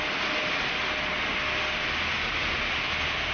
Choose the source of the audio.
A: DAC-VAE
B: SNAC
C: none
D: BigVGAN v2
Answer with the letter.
C